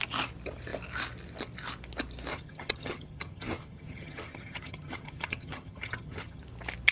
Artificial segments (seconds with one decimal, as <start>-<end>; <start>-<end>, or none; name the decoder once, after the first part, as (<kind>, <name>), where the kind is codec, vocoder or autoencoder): 2.3-6.4 (vocoder, HiFi-GAN)